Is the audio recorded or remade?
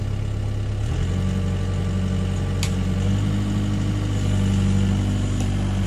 recorded